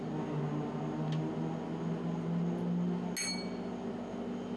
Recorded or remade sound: recorded